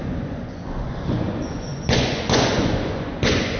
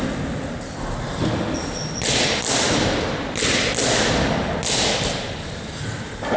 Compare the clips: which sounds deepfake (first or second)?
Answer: first